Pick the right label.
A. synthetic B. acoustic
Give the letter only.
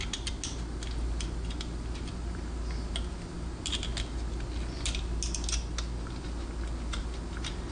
B